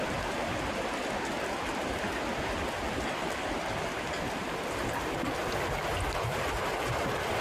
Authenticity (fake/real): real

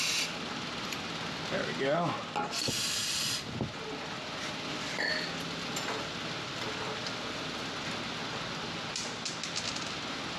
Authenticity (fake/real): real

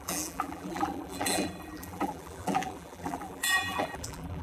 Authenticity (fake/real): fake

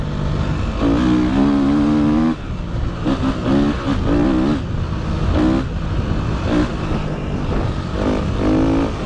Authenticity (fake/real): real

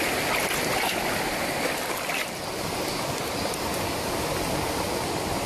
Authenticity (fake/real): real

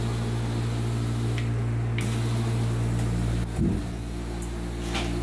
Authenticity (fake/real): real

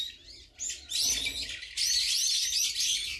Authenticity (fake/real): real